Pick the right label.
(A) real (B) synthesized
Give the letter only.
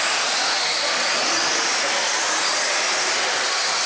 A